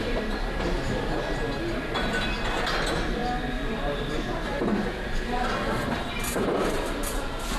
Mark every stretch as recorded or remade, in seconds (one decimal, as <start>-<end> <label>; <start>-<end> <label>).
0.0-7.6 recorded